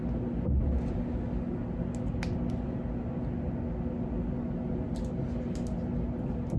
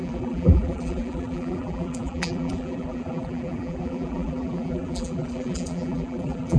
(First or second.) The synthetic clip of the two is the second